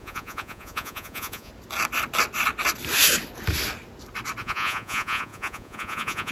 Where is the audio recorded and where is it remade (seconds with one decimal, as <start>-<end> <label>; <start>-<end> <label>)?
0.0-1.5 remade; 1.5-4.4 recorded; 4.4-6.3 remade